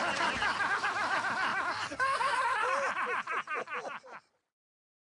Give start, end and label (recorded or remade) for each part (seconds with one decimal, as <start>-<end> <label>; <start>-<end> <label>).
0.0-1.5 recorded; 1.5-4.5 remade; 4.5-5.0 recorded